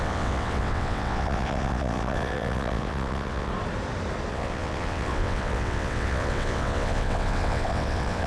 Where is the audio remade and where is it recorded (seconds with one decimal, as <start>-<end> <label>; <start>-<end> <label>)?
0.0-3.5 remade; 3.5-4.3 recorded; 4.3-8.3 remade